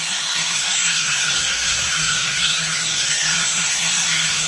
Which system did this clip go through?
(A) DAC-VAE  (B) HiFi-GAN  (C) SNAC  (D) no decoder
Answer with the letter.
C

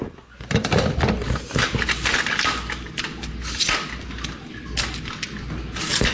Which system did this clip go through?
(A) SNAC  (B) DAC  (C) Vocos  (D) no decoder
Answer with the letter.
D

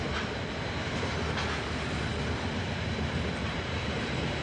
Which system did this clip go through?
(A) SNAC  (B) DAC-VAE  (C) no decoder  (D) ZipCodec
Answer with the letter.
C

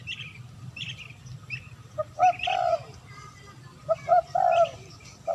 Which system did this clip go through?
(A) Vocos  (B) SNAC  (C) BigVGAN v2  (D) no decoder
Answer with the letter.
D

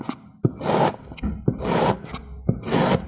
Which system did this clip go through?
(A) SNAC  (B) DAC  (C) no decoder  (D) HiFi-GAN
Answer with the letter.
C